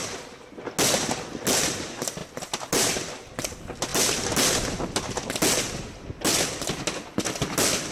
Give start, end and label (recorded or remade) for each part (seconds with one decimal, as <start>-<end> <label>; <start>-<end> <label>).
0.0-7.9 recorded